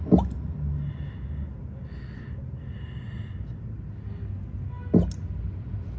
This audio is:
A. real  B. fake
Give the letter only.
A